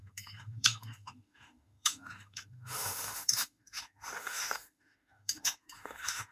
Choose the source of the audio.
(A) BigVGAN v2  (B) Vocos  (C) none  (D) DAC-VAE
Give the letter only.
D